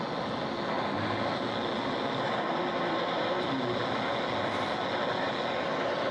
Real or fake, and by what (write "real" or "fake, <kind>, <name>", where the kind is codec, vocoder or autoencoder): real